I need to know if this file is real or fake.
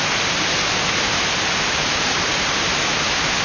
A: fake